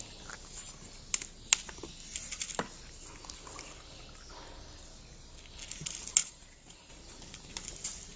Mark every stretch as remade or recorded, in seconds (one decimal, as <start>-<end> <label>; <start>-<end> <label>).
0.0-6.2 recorded; 6.2-6.9 remade; 6.9-8.2 recorded